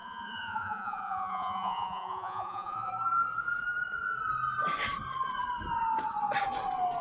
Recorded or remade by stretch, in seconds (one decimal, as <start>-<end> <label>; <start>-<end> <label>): 0.0-2.9 remade; 2.9-7.0 recorded

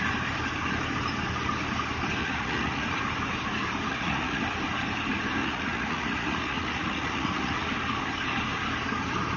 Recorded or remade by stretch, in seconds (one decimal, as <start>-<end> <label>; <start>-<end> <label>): 0.0-2.2 recorded; 2.2-3.0 remade; 3.0-3.9 recorded; 3.9-4.4 remade; 4.4-5.4 recorded; 5.4-7.7 remade; 7.7-9.4 recorded

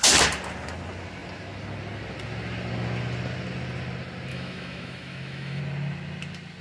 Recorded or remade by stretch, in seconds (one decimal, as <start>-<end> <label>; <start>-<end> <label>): 0.0-4.3 recorded; 4.3-5.6 remade; 5.6-6.6 recorded

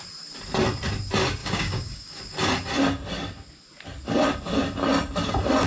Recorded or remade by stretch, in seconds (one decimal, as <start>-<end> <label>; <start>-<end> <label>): 0.0-1.4 recorded; 1.4-2.2 remade; 2.2-5.7 recorded

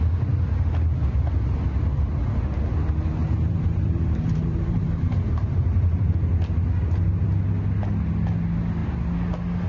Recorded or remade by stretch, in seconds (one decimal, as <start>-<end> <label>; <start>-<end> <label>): 0.0-3.2 recorded; 3.2-6.1 remade; 6.1-9.7 recorded

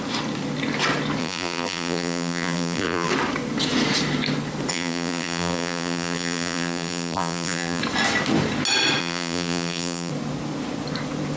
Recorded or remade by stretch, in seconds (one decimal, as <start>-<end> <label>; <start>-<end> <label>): 0.0-1.2 recorded; 1.2-3.1 remade; 3.1-4.7 recorded; 4.7-7.8 remade; 7.8-9.0 recorded; 9.0-10.1 remade; 10.1-11.4 recorded

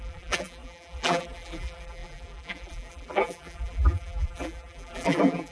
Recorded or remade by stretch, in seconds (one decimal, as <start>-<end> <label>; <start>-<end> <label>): 0.0-5.5 remade

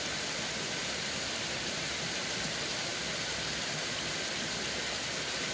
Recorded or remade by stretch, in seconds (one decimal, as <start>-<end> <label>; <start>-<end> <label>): 0.0-0.8 recorded; 0.8-2.2 remade; 2.2-5.5 recorded